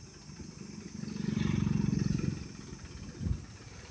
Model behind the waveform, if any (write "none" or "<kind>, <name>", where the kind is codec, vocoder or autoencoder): none